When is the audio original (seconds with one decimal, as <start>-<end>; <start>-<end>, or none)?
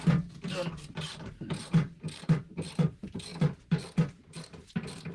0.0-0.9; 3.3-4.2